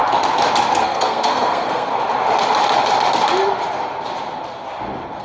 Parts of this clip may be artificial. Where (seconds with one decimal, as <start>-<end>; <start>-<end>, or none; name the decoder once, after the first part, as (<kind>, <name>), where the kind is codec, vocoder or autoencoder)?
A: 0.8-1.9 (codec, SNAC)